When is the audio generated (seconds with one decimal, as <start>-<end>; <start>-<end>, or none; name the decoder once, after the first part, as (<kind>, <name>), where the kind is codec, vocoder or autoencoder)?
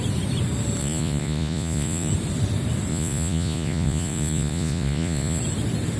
0.8-2.1 (vocoder, Vocos); 2.9-5.4